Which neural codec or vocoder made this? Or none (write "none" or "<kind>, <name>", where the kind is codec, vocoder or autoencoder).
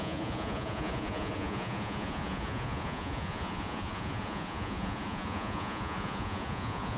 vocoder, Vocos